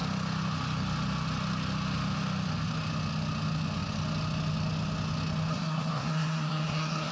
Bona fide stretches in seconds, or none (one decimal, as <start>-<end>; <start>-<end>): 0.0-5.5